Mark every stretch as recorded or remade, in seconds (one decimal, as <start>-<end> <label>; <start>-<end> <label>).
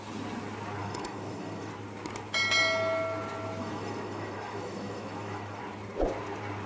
0.0-0.8 recorded; 0.8-1.7 remade; 1.7-3.6 recorded; 3.6-5.6 remade; 5.6-6.7 recorded